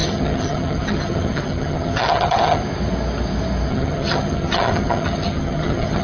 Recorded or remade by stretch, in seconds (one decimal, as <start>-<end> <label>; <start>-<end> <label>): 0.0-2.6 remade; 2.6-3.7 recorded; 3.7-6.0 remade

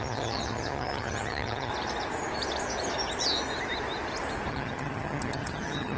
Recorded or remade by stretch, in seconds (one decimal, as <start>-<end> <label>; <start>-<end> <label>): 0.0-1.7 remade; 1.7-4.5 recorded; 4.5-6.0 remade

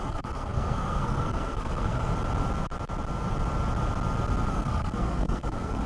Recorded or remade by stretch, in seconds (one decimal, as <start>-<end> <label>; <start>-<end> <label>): 0.0-2.1 remade; 2.1-4.5 recorded; 4.5-5.9 remade

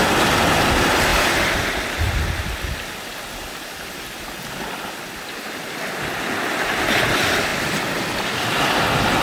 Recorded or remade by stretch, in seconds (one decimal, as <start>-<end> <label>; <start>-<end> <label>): 0.0-9.2 recorded